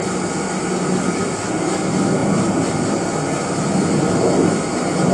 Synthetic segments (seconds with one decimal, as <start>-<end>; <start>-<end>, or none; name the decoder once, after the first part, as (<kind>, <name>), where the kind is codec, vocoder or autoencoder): none

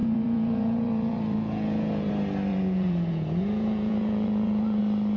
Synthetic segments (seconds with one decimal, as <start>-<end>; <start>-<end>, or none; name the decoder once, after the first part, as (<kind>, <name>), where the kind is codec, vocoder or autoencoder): 0.0-2.1 (vocoder, Vocos); 2.5-4.8